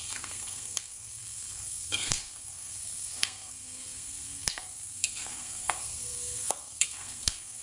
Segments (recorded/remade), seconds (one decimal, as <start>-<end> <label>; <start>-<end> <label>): 0.0-7.6 remade